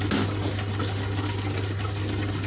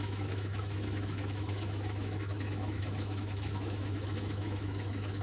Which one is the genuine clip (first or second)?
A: first